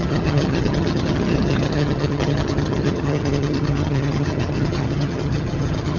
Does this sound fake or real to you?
fake